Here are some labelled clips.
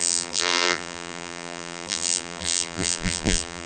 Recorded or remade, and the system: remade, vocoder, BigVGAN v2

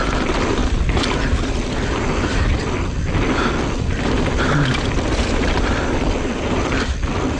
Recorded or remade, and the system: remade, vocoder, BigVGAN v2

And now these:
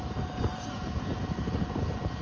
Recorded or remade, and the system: remade, vocoder, BigVGAN v2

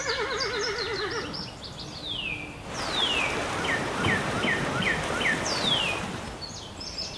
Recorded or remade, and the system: recorded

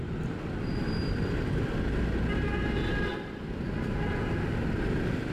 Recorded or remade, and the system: recorded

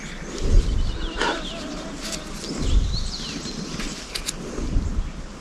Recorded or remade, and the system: recorded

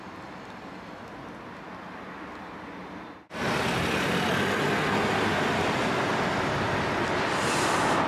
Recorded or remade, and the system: recorded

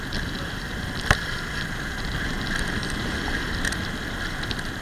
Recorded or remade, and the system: remade, vocoder, BigVGAN v2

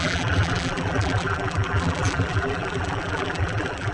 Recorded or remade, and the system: remade, vocoder, BigVGAN v2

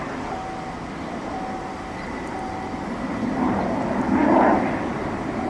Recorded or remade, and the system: recorded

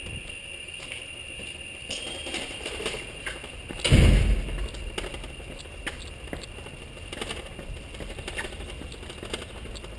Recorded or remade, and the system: recorded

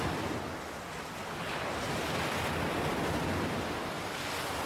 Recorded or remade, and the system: recorded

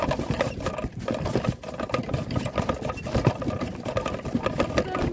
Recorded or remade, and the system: recorded